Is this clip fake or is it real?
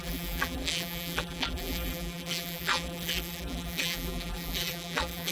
fake